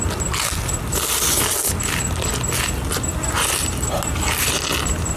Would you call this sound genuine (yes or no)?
yes